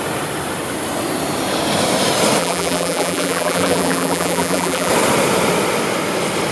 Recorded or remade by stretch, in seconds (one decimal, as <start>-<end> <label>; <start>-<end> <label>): 0.0-2.4 recorded; 2.4-4.9 remade; 4.9-6.5 recorded